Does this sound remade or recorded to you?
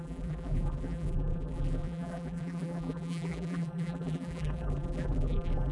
remade